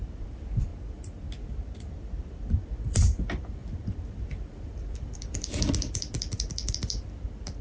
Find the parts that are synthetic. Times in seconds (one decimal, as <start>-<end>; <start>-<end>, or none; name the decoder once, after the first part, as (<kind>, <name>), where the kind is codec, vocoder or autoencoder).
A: 0.0-0.7 (vocoder, BigVGAN v2); 1.8-7.6